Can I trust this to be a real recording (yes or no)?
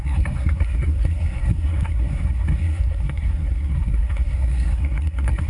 no